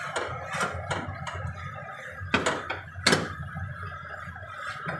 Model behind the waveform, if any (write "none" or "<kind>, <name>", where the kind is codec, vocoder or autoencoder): none